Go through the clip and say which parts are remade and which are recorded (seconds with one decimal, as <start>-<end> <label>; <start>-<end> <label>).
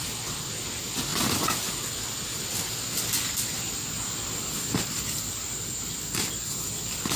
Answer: 0.0-7.2 recorded